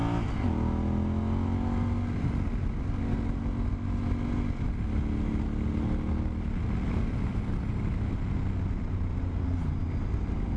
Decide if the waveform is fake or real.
real